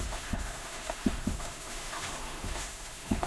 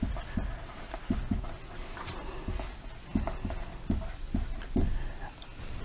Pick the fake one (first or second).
first